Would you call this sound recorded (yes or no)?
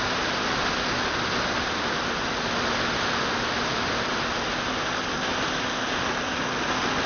yes